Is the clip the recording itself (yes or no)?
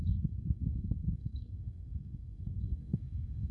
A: no